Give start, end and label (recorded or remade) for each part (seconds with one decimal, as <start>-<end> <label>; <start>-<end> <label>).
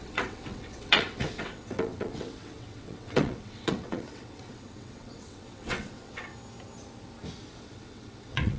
0.0-6.3 remade; 6.3-7.6 recorded; 7.6-8.6 remade